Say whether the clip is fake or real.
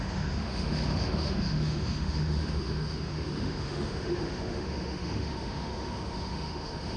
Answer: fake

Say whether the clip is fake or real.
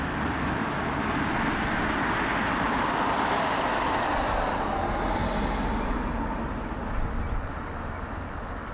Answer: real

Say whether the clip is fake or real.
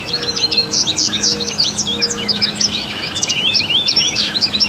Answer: fake